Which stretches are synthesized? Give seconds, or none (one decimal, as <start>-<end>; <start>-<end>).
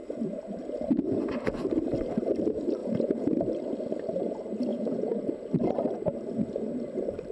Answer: 2.8-3.3; 4.7-5.3